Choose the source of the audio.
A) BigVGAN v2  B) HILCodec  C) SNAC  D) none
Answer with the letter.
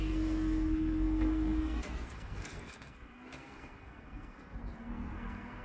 C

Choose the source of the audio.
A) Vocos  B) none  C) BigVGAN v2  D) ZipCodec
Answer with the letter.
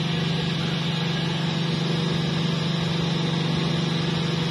B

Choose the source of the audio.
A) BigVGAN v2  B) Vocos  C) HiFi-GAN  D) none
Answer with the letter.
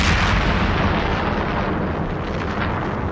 D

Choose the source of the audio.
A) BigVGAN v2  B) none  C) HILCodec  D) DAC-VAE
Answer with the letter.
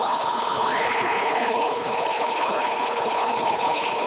C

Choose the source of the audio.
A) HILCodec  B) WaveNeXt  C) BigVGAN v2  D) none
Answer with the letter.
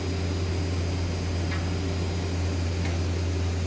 D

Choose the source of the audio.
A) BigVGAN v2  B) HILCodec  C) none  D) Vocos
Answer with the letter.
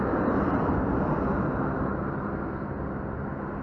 C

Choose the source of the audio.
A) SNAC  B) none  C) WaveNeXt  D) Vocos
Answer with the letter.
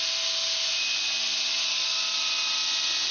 B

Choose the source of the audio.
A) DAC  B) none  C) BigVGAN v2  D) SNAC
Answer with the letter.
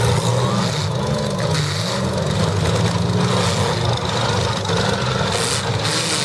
B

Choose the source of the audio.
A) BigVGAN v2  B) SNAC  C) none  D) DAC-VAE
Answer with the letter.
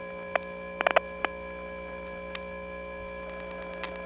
C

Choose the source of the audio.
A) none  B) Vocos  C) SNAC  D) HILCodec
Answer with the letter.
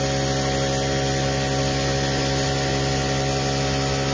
A